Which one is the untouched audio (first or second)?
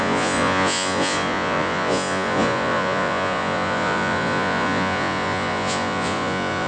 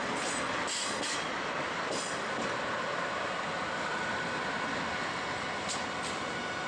second